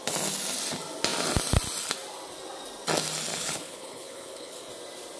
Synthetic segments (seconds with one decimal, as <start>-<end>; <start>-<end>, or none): 3.3-4.7